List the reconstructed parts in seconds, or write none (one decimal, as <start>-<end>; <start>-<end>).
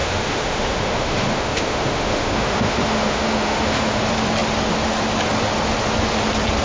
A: 0.0-4.0